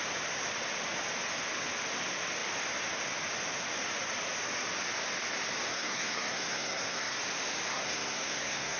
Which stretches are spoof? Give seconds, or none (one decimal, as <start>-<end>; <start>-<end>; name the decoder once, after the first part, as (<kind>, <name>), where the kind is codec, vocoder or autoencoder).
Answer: 5.7-7.2 (codec, SNAC); 7.7-8.8